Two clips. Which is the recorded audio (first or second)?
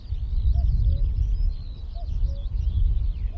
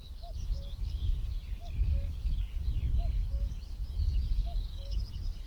first